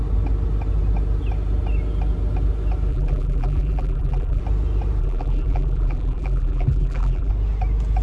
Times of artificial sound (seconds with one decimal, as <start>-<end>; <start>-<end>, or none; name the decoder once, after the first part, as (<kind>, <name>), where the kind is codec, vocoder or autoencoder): 2.9-4.4 (vocoder, BigVGAN v2); 5.0-7.3